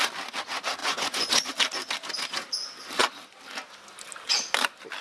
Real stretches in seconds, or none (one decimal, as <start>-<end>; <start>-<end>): 0.0-0.8; 1.5-5.0